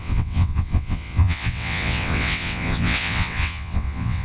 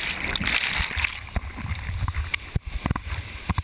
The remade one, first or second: first